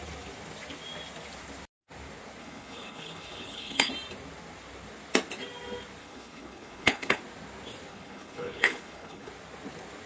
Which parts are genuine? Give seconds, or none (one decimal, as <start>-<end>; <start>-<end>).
0.0-2.4; 3.9-6.0; 7.2-7.9; 9.3-10.1